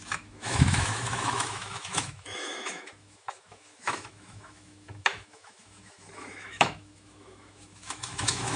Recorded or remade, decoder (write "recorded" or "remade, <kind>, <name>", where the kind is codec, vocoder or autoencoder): remade, autoencoder, DAC-VAE